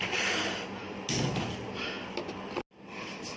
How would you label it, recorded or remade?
recorded